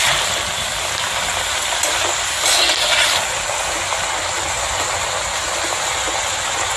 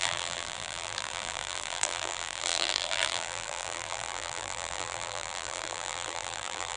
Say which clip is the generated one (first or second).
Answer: second